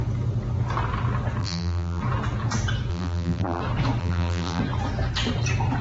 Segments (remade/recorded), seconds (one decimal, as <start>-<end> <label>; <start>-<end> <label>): 0.0-1.4 recorded; 1.4-2.0 remade; 2.0-2.9 recorded; 2.9-3.6 remade; 3.6-4.0 recorded; 4.0-4.6 remade; 4.6-5.8 recorded